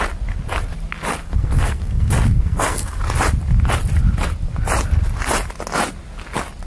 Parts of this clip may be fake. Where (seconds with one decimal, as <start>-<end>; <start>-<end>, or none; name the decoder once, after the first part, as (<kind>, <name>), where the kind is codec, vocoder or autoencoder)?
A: 1.1-3.0 (codec, SNAC)